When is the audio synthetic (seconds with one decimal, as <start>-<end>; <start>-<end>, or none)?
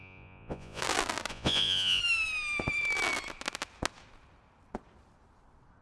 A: 0.0-0.8; 1.3-2.0